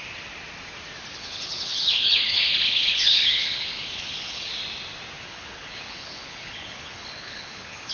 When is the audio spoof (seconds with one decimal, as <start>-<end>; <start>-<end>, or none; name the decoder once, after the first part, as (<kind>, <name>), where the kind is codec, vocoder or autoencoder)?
1.1-4.5 (codec, HILCodec); 5.2-7.9